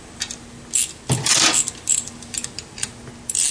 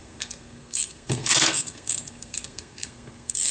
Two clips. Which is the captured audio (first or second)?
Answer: first